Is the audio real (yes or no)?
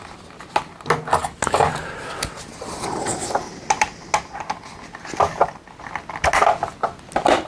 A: yes